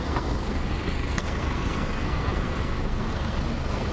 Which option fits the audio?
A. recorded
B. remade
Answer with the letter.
B